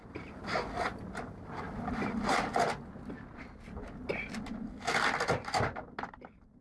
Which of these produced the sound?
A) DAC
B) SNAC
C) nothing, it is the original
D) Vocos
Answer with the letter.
C